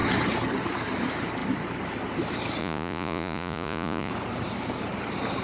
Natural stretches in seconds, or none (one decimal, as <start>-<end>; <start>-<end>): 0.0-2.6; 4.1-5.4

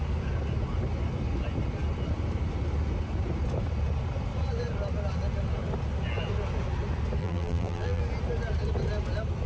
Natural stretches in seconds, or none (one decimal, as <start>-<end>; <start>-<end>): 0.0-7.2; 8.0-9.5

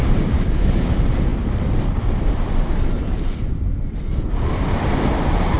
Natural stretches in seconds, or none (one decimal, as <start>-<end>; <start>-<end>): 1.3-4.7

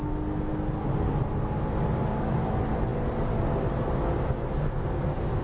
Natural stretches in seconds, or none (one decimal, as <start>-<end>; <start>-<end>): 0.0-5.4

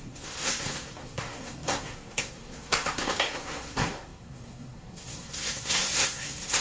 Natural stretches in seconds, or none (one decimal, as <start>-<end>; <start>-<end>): none

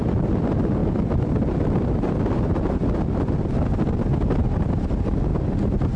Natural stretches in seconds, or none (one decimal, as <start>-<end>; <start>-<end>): 0.0-5.3

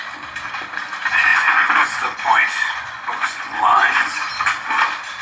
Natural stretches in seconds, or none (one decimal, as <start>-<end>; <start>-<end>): 0.0-1.3; 4.3-5.2

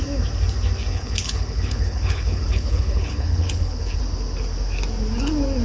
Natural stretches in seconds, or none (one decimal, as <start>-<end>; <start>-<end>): 0.0-0.9; 4.0-5.6